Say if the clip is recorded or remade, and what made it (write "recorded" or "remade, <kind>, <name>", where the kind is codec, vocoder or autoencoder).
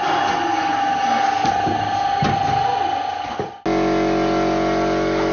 recorded